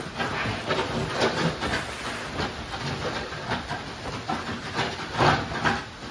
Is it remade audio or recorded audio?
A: recorded